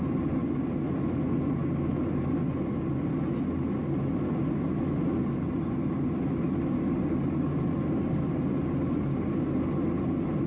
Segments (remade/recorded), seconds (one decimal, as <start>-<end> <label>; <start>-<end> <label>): 0.0-10.5 recorded